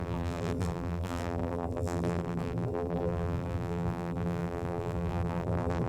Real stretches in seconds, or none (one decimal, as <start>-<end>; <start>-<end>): none